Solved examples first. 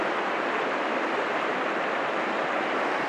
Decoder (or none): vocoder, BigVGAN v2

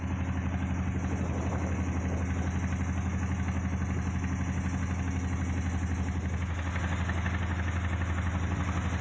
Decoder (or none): none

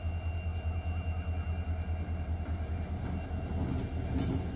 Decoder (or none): none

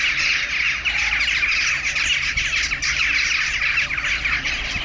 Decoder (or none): none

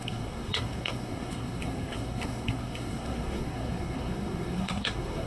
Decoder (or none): codec, SNAC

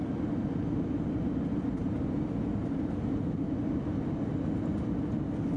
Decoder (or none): none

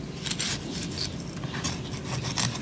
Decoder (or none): none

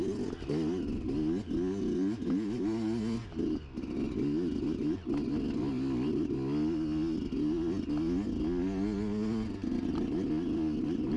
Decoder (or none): none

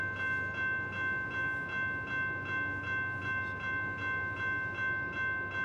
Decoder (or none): none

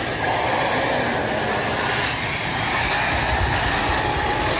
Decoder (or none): none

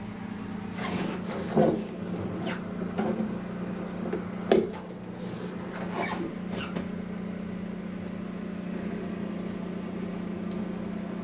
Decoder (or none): none